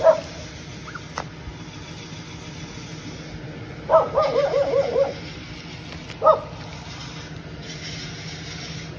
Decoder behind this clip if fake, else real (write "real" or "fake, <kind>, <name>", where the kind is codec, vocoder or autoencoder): real